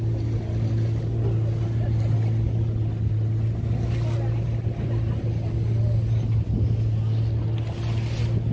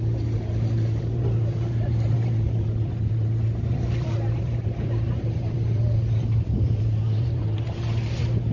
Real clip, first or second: first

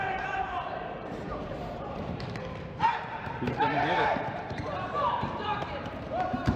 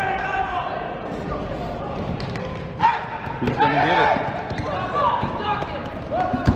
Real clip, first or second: second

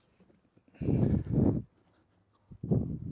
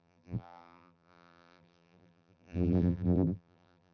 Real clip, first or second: first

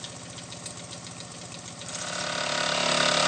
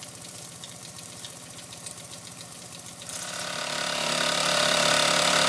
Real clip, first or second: first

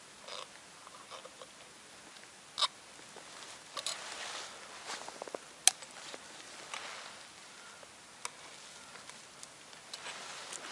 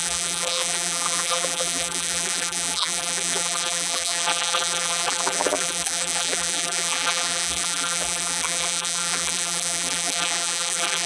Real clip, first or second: first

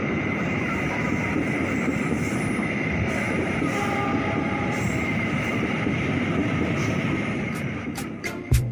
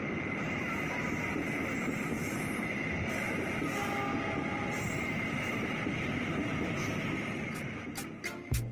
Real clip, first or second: second